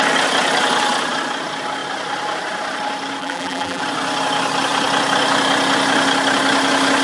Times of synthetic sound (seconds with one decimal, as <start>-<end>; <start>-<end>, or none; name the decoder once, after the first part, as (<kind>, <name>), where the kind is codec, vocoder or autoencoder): 3.2-3.8 (vocoder, BigVGAN v2)